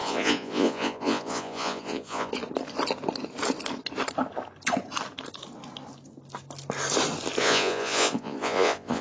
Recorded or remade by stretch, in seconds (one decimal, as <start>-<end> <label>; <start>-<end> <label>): 0.0-2.3 remade; 2.3-7.4 recorded; 7.4-9.0 remade